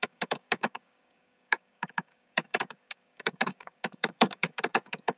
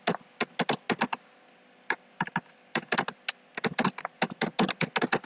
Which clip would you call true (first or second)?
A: second